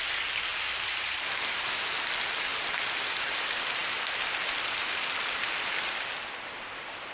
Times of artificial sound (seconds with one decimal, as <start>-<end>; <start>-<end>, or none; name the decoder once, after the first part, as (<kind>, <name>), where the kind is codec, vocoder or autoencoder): 0.5-1.6 (vocoder, BigVGAN v2)